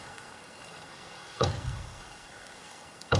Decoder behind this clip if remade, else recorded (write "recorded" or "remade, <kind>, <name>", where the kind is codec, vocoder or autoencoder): remade, codec, SNAC